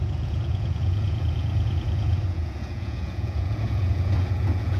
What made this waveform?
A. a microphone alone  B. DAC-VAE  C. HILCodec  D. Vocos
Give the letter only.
D